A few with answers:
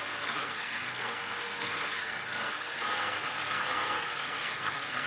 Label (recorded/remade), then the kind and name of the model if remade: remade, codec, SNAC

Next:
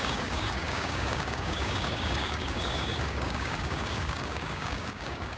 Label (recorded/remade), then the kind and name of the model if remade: remade, codec, DAC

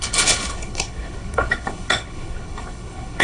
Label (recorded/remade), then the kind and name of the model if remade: remade, codec, HILCodec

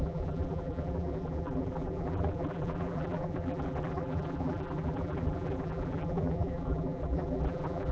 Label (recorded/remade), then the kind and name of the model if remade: remade, vocoder, BigVGAN v2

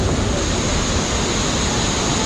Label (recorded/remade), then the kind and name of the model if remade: recorded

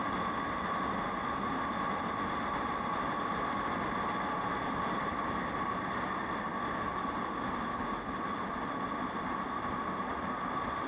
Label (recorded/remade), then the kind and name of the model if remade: recorded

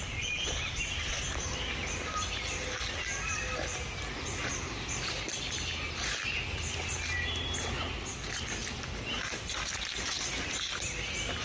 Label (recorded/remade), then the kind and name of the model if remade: recorded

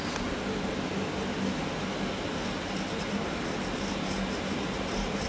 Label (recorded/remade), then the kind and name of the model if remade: recorded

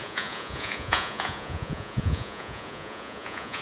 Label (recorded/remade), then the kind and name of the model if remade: remade, vocoder, Vocos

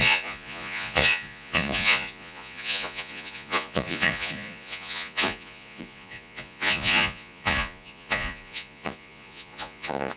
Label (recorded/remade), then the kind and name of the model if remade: remade, vocoder, Vocos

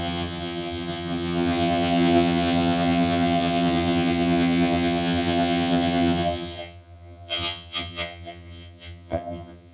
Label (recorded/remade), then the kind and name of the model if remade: remade, vocoder, HiFi-GAN